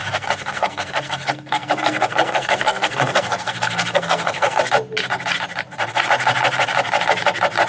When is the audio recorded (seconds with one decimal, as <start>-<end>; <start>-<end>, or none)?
4.6-7.7